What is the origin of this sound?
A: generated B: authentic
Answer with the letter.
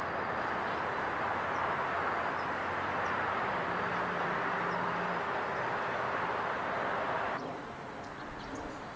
B